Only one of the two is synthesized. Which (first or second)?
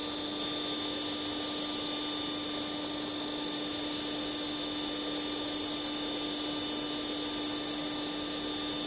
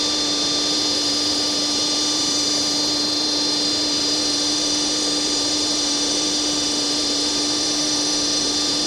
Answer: second